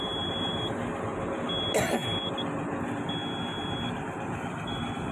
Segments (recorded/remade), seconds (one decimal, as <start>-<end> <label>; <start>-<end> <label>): 0.0-1.1 remade; 1.1-4.0 recorded; 4.0-5.1 remade